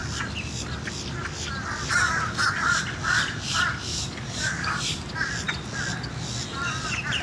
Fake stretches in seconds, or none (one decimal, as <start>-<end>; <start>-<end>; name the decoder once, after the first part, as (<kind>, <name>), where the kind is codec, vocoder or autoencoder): 3.9-4.8 (codec, DAC)